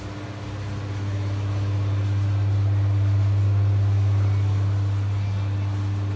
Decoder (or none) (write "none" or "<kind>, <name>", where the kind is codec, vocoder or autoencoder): none